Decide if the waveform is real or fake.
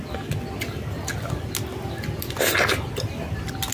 real